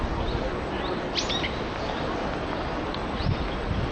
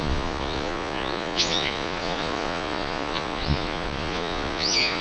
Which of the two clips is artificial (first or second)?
second